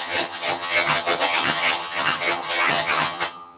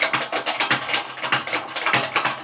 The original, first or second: second